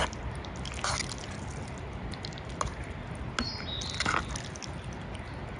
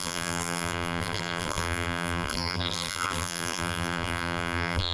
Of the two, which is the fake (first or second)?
second